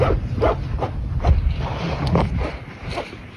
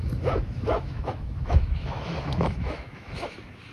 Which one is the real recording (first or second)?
first